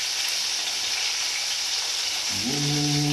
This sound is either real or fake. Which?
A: real